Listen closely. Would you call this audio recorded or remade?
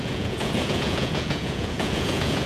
remade